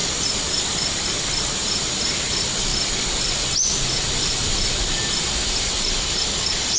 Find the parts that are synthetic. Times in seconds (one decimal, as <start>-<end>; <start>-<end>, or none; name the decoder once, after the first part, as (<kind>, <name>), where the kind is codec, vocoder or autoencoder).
none

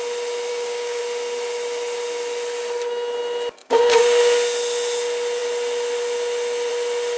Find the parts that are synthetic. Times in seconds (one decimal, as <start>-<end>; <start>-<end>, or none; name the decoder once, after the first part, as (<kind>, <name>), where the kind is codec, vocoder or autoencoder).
0.5-1.0 (codec, DAC); 3.6-4.2

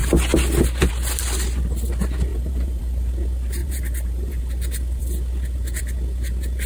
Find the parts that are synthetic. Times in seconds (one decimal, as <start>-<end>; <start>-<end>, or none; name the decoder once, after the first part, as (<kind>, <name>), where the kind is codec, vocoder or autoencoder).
2.3-3.1 (vocoder, BigVGAN v2); 3.6-4.4

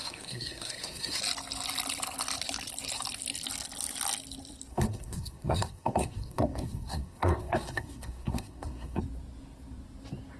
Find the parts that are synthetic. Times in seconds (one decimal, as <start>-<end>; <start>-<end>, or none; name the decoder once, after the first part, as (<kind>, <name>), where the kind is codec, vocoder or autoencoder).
0.0-1.2 (codec, SNAC); 4.7-9.0